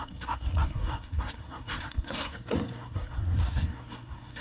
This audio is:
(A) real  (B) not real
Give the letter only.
B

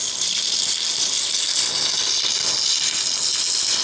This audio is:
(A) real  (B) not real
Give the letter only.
A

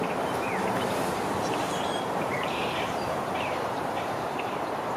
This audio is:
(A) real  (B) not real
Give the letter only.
B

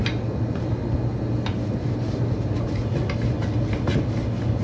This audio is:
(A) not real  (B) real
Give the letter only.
B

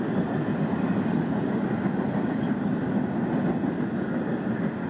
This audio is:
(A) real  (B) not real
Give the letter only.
A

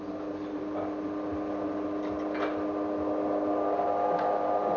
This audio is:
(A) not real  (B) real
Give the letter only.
B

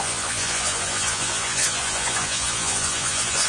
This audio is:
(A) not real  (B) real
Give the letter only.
A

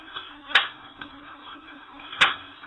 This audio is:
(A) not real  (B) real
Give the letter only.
A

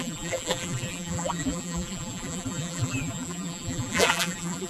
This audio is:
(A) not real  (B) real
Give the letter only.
A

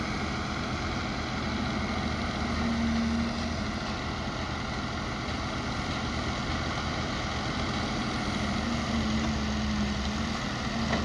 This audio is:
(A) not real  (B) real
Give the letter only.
B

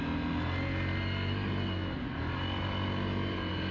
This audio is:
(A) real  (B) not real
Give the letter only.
A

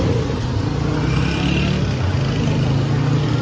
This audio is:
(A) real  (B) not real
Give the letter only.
A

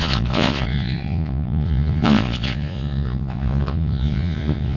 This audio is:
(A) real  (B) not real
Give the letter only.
B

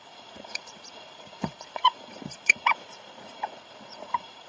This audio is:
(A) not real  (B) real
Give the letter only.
A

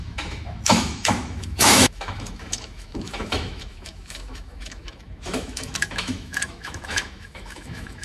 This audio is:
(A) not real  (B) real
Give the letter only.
A